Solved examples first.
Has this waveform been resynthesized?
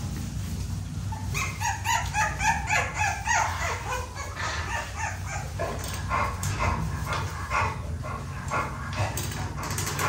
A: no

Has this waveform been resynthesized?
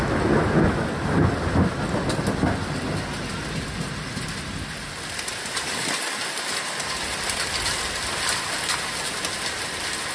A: no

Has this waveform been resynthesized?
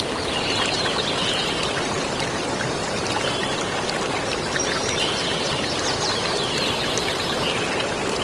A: yes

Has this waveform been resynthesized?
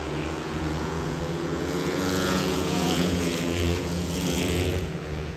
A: yes